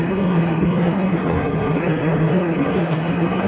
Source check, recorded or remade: remade